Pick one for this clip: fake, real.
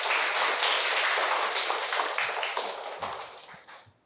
real